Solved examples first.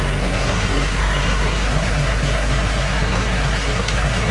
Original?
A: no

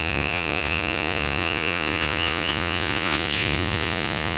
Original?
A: no